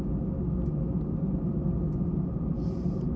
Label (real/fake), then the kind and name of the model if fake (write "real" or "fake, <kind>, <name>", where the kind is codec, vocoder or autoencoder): real